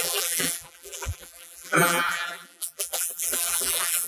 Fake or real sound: fake